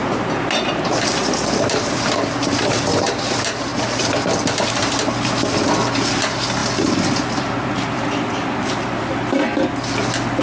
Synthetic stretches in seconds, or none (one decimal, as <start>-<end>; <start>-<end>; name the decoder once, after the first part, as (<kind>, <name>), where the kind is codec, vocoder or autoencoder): 0.0-2.6 (vocoder, BigVGAN v2); 6.6-9.1